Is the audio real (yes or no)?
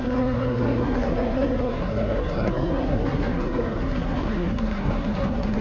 no